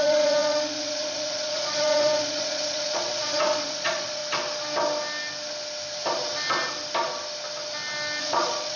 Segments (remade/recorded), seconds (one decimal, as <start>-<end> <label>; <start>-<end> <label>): 0.0-4.2 remade; 4.2-8.2 recorded; 8.2-8.8 remade